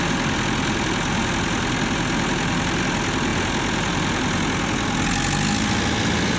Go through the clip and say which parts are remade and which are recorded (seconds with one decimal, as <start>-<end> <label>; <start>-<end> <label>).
0.0-6.4 recorded